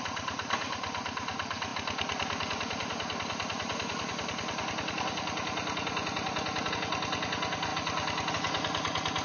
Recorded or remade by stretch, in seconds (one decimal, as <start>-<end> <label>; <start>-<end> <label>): 0.0-9.2 recorded